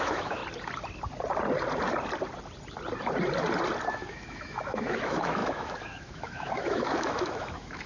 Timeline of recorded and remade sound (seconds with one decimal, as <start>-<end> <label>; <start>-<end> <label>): 0.0-0.4 remade; 0.4-3.9 recorded; 3.9-7.9 remade